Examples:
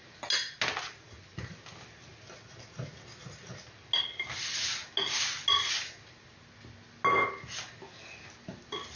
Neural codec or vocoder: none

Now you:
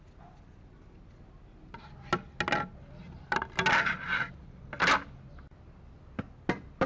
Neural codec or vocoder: none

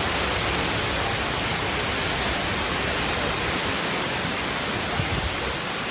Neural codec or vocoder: none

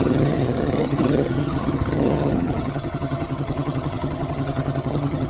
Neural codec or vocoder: vocoder, HiFi-GAN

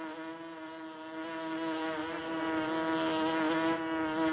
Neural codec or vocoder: none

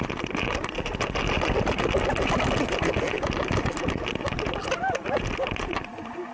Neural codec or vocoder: none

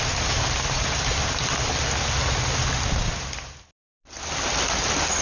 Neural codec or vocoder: none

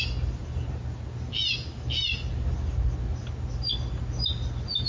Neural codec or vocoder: none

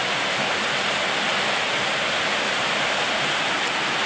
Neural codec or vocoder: none